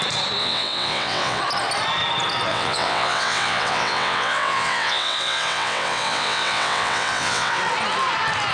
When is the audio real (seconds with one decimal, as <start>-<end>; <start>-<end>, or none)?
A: 0.0-0.4; 1.4-2.5; 7.6-8.5